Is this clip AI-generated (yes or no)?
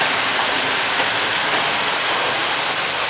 no